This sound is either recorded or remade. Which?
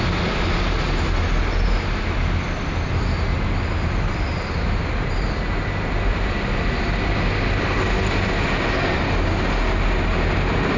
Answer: recorded